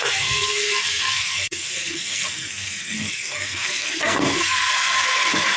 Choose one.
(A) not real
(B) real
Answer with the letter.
A